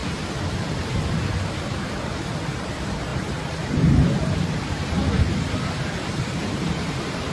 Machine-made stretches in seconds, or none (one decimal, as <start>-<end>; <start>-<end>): 1.8-5.0; 5.7-7.3